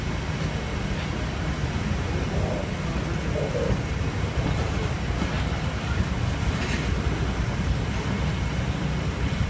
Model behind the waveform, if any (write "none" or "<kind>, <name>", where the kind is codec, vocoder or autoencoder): none